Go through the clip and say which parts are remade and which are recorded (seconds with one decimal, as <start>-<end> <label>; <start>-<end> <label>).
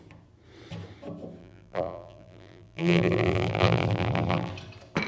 0.0-1.4 recorded; 1.4-4.5 remade; 4.5-5.1 recorded